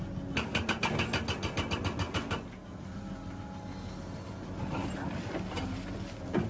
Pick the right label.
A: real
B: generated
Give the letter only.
A